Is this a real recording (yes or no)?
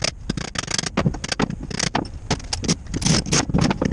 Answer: yes